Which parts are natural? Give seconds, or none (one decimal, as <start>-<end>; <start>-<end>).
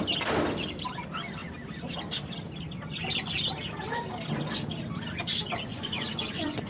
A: 0.0-5.7